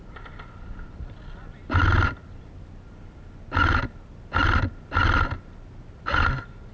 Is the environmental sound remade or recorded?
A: recorded